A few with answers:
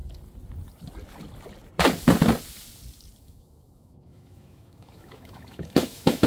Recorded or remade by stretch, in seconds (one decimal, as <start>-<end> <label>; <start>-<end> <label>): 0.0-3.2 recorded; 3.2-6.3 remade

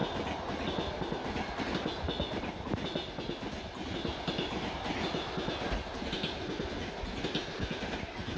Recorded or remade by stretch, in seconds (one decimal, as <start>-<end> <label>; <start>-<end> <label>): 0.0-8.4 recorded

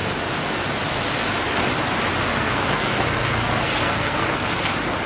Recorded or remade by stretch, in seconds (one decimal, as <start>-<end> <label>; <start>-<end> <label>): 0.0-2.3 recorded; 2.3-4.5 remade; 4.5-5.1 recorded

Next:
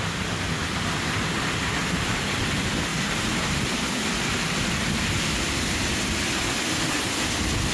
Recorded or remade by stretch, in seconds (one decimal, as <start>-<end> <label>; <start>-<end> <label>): 0.0-1.8 recorded; 1.8-2.4 remade; 2.4-2.9 recorded; 2.9-3.6 remade; 3.6-7.7 recorded

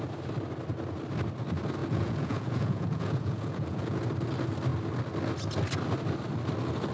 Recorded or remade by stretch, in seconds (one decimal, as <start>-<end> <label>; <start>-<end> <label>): 0.0-1.8 recorded; 1.8-4.0 remade; 4.0-6.9 recorded